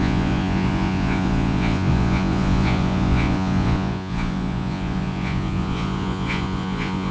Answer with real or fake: fake